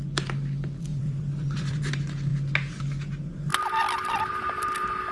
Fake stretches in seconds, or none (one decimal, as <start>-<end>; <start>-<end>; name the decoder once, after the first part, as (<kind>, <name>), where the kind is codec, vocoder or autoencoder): 0.9-1.9 (vocoder, BigVGAN v2)